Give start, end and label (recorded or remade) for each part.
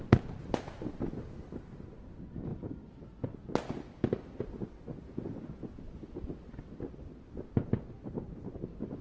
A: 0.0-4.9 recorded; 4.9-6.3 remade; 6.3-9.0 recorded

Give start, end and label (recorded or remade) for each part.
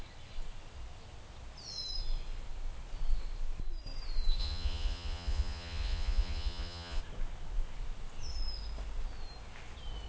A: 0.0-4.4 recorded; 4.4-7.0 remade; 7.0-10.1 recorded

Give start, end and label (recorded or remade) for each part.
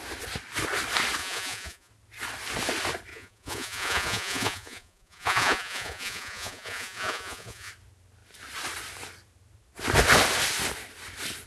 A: 0.0-1.2 recorded; 1.2-1.9 remade; 1.9-3.1 recorded; 3.1-7.7 remade; 7.7-11.5 recorded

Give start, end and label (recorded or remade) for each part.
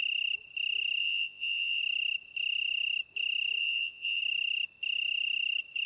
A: 0.0-1.0 recorded; 1.0-1.8 remade; 1.8-3.6 recorded; 3.6-4.2 remade; 4.2-5.9 recorded